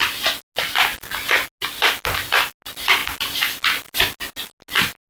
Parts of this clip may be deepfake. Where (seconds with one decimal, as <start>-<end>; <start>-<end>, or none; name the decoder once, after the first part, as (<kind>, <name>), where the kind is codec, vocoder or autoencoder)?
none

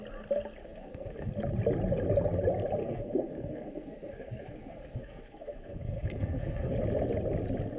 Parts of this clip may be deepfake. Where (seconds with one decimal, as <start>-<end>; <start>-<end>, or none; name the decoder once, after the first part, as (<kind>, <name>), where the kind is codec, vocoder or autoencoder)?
0.6-1.3 (codec, SNAC); 2.8-6.7

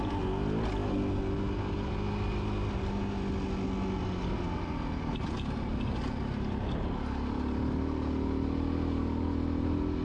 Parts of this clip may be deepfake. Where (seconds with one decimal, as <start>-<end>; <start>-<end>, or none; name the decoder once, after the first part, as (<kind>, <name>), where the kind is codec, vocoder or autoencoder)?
none

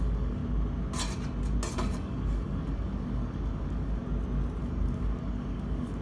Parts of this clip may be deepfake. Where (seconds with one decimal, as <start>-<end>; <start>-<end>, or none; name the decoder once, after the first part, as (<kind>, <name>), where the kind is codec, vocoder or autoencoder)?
0.0-0.4 (codec, DAC); 1.7-4.0; 4.6-6.0